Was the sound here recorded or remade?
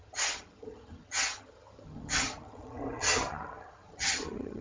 remade